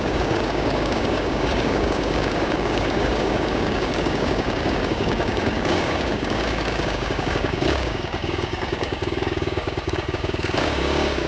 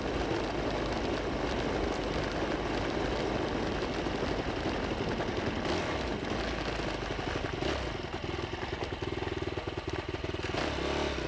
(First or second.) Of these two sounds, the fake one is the first